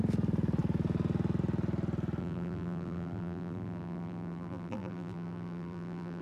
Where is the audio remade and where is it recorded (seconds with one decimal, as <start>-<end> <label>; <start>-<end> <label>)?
0.0-2.2 recorded; 2.2-6.2 remade